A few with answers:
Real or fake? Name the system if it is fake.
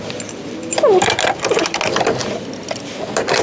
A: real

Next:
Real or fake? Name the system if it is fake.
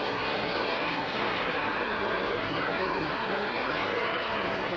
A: fake, codec, SNAC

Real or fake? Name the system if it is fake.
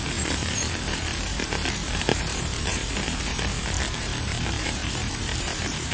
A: fake, vocoder, BigVGAN v2